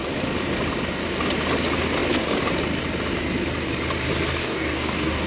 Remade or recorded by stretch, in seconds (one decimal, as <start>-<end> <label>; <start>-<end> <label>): 0.0-4.4 recorded; 4.4-5.3 remade